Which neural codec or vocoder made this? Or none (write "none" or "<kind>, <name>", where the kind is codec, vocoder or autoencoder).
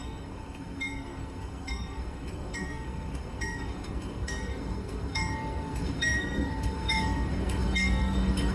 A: codec, SNAC